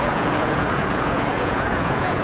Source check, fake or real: fake